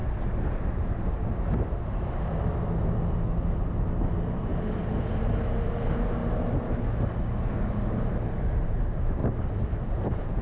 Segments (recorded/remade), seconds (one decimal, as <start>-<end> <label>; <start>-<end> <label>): 0.0-3.8 recorded; 3.8-4.5 remade; 4.5-5.2 recorded; 5.2-6.2 remade; 6.2-8.0 recorded; 8.0-9.2 remade; 9.2-10.0 recorded; 10.0-10.4 remade